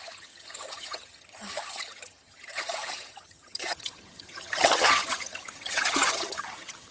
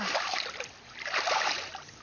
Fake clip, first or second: first